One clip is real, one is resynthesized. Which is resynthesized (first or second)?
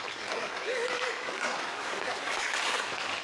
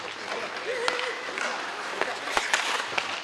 first